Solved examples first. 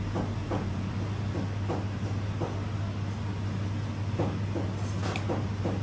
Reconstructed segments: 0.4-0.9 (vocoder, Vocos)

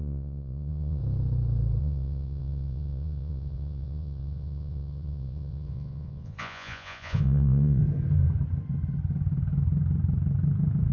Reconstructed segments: 0.0-1.0 (vocoder, Vocos); 1.8-7.8

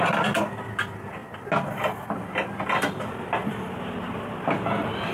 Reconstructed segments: none

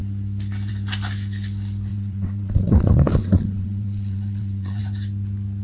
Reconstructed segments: 1.9-4.8 (vocoder, WaveNeXt)

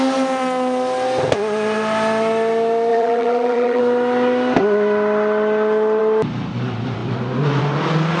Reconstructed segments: 2.9-3.8 (vocoder, BigVGAN v2)

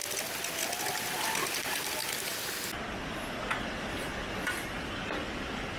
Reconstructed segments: none

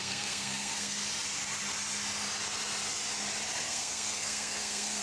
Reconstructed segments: 0.0-1.0 (codec, SNAC); 3.6-5.0

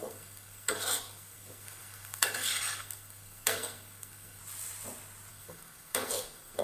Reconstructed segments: 0.0-4.4 (codec, SNAC); 5.3-6.6